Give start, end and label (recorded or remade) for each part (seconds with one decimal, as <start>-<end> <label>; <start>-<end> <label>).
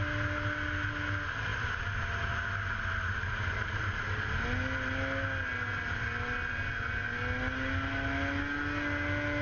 0.0-9.4 recorded